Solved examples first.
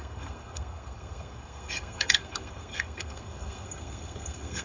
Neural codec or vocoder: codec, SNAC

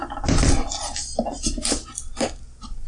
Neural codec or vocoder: none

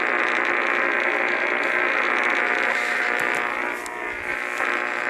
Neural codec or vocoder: none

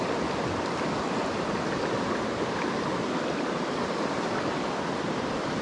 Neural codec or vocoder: none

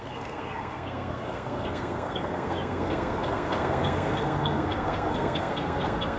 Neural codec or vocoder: codec, SNAC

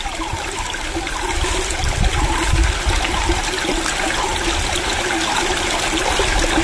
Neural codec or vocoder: none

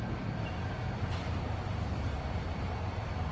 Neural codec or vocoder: none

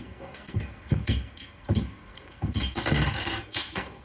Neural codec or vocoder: codec, SNAC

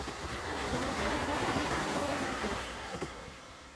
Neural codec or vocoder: codec, SNAC